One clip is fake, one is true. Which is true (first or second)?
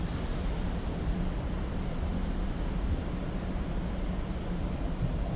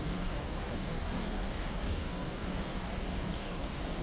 first